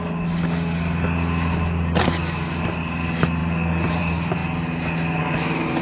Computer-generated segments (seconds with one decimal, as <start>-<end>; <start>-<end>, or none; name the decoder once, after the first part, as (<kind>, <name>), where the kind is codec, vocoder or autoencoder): none